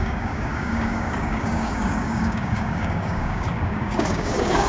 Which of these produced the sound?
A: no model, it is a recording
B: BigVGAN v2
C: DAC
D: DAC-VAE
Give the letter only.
C